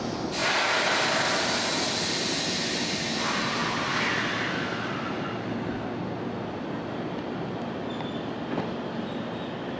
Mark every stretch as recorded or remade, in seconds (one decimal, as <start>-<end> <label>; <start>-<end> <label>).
0.0-9.8 recorded